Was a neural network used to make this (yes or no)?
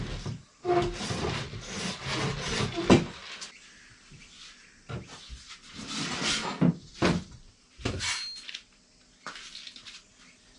no